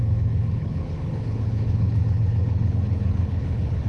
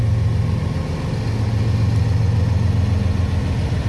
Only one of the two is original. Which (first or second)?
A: second